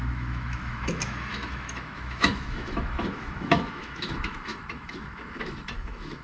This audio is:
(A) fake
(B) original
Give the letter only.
A